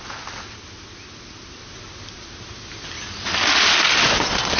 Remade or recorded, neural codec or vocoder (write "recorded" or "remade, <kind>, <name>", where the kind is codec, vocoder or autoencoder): recorded